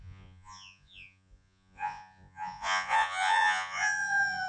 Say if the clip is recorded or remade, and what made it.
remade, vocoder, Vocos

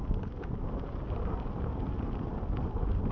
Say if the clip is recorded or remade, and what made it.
recorded